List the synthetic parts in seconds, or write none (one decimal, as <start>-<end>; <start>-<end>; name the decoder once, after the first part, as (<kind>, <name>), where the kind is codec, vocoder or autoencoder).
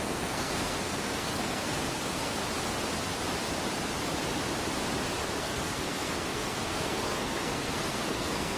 0.0-2.4 (codec, SNAC); 5.4-8.6